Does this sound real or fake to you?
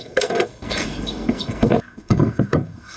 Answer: fake